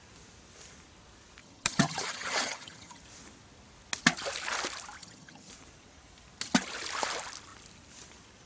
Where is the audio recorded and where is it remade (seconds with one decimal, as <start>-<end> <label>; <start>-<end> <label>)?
0.0-1.4 recorded; 1.4-3.0 remade; 3.0-5.0 recorded; 5.0-5.5 remade; 5.5-8.5 recorded